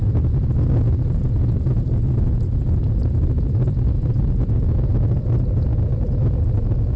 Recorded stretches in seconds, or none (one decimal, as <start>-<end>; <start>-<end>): 0.0-7.0